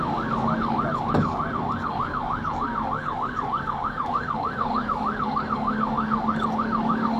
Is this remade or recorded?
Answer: remade